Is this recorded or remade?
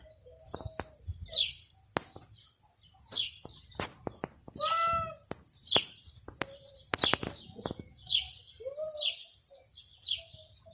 recorded